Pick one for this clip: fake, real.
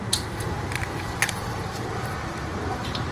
fake